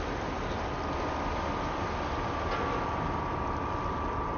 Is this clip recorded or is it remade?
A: recorded